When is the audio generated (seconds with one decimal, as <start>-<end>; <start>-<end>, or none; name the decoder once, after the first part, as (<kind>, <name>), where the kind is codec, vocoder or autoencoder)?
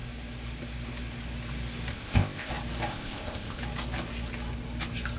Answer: 1.9-2.5 (codec, ZipCodec); 2.9-3.6